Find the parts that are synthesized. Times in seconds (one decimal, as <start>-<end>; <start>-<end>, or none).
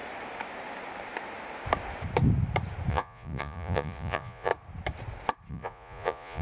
2.9-4.5; 5.5-6.4